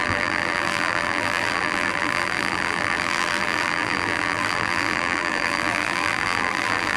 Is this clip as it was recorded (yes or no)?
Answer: no